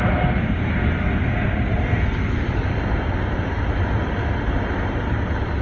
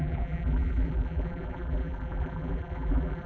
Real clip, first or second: first